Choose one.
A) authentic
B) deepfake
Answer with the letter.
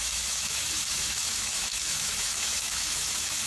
B